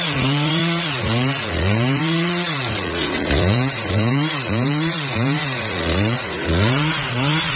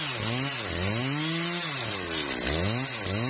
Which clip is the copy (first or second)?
first